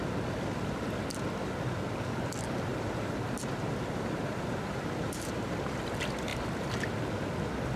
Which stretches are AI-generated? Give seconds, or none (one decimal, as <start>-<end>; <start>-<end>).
2.7-5.8